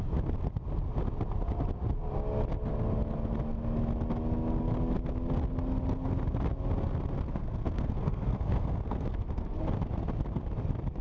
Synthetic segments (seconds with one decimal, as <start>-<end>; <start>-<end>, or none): 7.4-9.6